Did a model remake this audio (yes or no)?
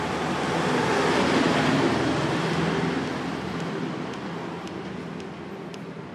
no